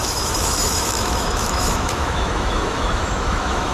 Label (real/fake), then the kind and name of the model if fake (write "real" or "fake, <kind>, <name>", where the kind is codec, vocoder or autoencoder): fake, autoencoder, DAC-VAE